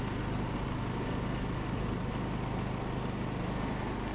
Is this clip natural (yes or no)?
yes